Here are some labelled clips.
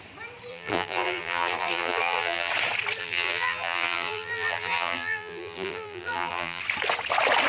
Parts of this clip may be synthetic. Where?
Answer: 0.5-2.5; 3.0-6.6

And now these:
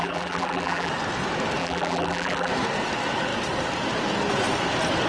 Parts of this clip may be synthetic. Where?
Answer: 0.0-0.9; 1.6-2.5